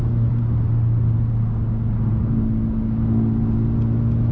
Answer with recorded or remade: recorded